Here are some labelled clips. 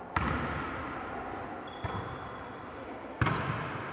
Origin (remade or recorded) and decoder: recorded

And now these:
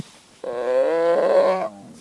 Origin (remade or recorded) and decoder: recorded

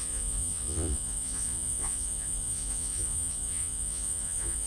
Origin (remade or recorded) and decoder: remade, vocoder, Vocos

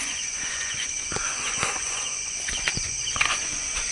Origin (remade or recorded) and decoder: remade, vocoder, Vocos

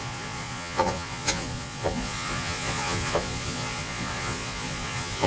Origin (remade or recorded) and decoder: remade, vocoder, Vocos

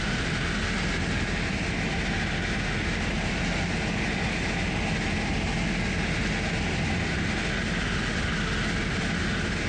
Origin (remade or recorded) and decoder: recorded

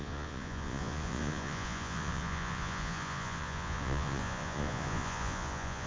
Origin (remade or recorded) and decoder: remade, vocoder, Vocos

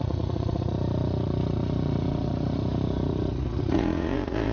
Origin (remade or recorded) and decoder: remade, vocoder, Vocos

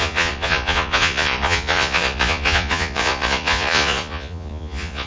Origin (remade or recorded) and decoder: remade, vocoder, Vocos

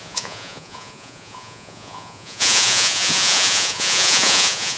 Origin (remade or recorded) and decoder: remade, vocoder, Vocos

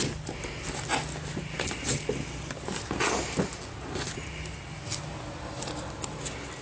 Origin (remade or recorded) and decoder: recorded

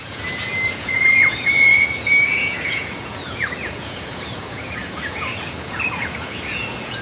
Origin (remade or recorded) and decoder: remade, vocoder, Vocos